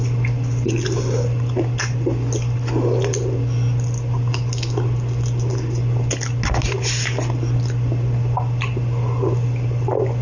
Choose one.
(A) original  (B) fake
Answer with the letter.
A